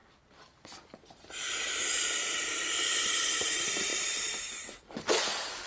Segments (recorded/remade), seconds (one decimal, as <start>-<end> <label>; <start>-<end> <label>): 0.0-5.7 remade